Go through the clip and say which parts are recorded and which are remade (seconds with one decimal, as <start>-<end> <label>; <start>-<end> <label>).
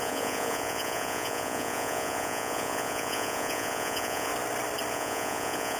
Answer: 0.0-4.3 remade; 4.3-4.9 recorded; 4.9-5.8 remade